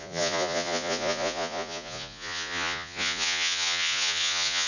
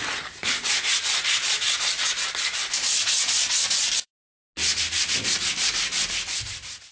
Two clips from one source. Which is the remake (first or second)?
first